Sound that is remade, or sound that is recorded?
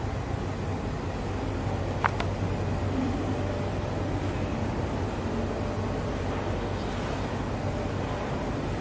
recorded